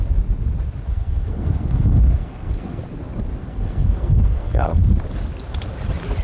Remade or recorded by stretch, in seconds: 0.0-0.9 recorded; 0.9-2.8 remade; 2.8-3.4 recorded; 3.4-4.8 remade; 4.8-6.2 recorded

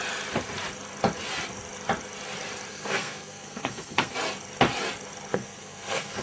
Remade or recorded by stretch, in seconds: 0.0-2.7 recorded; 2.7-4.1 remade; 4.1-5.3 recorded; 5.3-6.2 remade

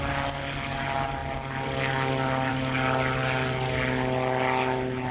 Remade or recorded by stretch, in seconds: 0.0-5.1 recorded

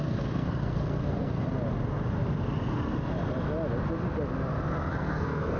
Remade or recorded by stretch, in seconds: 0.0-1.5 remade; 1.5-4.9 recorded; 4.9-5.6 remade